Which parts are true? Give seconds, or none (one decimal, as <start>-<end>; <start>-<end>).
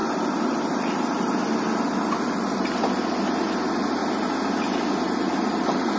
4.0-5.0